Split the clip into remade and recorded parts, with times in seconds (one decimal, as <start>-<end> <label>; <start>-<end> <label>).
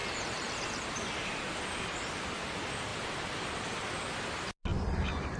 0.0-2.4 remade; 2.4-2.9 recorded; 2.9-3.6 remade; 3.6-4.7 recorded; 4.7-5.4 remade